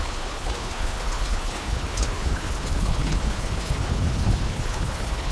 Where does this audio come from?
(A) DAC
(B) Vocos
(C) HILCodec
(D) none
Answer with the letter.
C